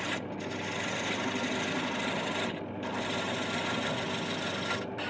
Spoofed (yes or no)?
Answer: no